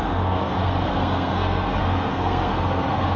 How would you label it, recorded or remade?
remade